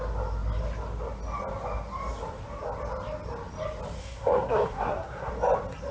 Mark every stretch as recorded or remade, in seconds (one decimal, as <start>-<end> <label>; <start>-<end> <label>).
0.0-4.0 recorded; 4.0-5.3 remade; 5.3-5.9 recorded